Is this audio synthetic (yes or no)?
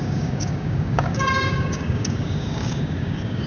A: yes